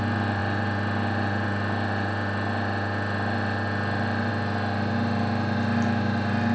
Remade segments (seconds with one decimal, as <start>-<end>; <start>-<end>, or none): none